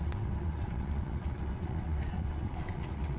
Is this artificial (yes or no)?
yes